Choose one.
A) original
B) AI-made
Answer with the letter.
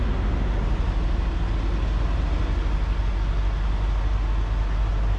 A